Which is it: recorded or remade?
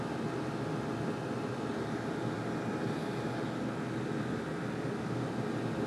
recorded